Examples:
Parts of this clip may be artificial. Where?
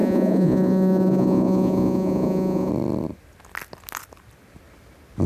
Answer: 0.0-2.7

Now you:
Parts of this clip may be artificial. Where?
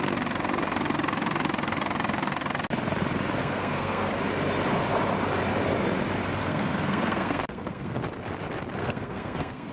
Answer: 3.4-4.1; 6.4-8.0; 8.8-9.7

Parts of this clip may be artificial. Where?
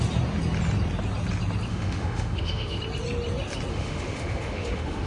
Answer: 1.7-2.8; 3.7-5.1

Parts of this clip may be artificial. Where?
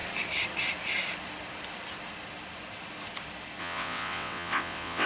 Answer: 3.6-5.1